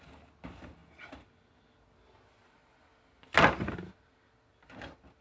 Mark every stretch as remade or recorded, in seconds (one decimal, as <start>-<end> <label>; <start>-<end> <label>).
0.0-5.2 recorded